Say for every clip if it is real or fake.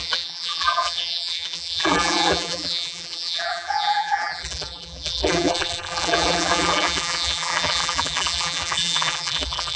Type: fake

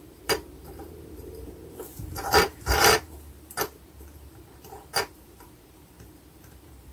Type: fake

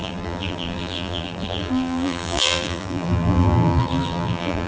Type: fake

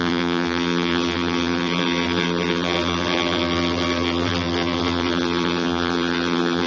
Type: fake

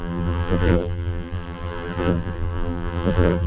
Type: fake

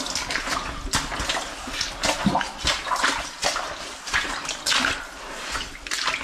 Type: real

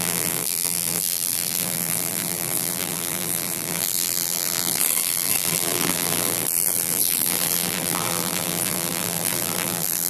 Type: fake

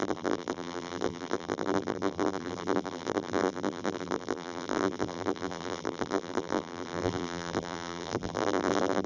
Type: fake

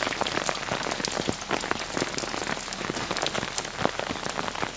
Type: real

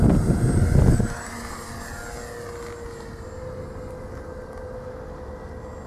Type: real